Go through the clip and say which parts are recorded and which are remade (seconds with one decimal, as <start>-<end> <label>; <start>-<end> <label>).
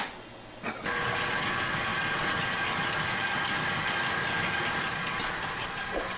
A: 0.0-6.2 recorded